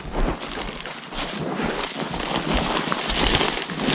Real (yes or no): yes